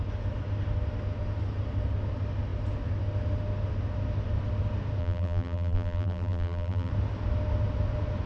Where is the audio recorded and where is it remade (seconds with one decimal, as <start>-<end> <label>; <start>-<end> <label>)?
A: 0.0-5.0 recorded; 5.0-6.9 remade; 6.9-8.3 recorded